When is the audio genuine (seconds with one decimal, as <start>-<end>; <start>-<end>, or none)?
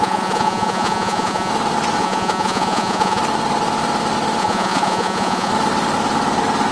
1.5-2.0; 3.2-4.4; 5.5-6.7